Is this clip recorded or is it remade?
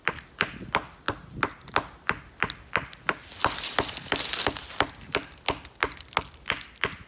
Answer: recorded